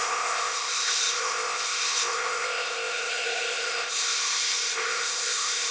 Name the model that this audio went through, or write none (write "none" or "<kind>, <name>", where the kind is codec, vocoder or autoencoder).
codec, ZipCodec